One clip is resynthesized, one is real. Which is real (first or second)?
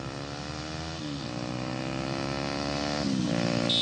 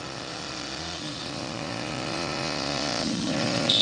first